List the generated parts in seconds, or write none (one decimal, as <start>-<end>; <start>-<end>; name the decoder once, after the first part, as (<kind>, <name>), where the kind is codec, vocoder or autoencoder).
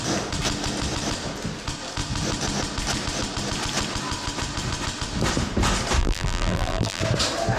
6.0-7.0 (vocoder, BigVGAN v2)